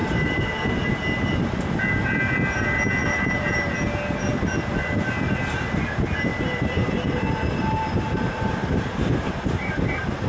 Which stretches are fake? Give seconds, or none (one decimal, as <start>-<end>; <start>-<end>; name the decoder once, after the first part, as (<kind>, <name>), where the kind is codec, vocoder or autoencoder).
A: 0.0-0.9 (vocoder, BigVGAN v2); 3.0-3.7; 6.3-10.3